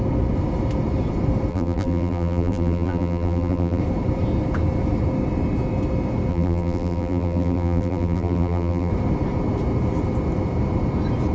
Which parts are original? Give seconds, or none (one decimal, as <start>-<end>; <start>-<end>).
0.0-1.5; 3.8-6.3; 8.9-11.3